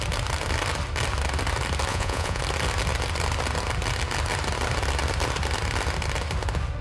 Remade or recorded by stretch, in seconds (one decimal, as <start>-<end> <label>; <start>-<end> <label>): 0.0-1.9 recorded; 1.9-2.4 remade; 2.4-6.8 recorded